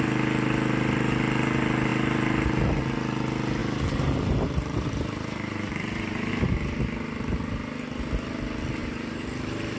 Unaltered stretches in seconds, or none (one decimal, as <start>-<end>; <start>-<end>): 0.0-3.6; 6.3-8.8